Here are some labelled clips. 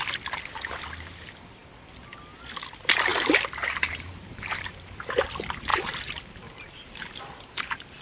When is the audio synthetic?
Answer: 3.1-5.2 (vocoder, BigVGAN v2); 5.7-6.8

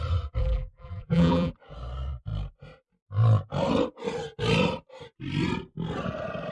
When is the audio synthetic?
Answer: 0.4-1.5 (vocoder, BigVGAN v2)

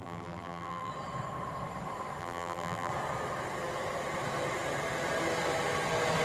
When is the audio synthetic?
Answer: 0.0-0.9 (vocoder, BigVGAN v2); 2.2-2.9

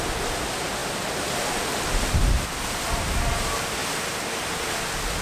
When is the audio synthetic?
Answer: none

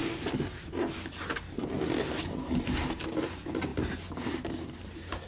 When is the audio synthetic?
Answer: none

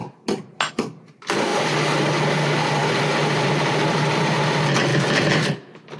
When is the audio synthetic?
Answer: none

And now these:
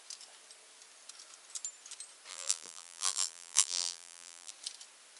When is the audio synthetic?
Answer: 2.3-4.5 (vocoder, BigVGAN v2)

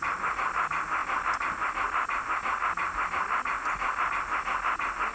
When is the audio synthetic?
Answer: none